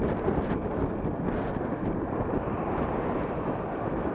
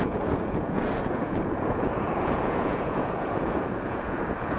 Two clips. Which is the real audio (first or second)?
first